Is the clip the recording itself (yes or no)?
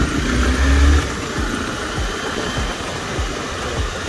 yes